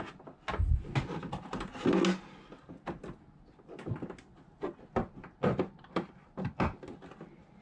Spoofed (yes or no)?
no